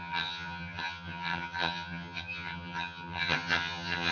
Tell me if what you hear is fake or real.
fake